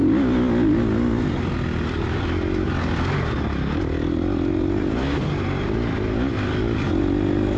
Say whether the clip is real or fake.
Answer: real